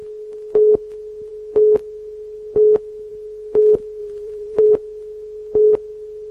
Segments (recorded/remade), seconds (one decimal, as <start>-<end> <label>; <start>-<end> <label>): 0.0-4.0 recorded; 4.0-4.6 remade; 4.6-6.3 recorded